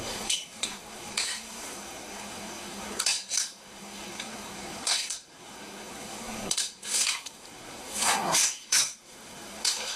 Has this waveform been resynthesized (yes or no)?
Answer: yes